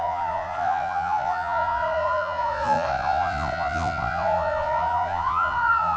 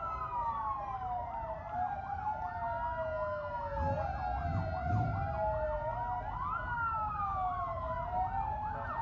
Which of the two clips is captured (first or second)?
second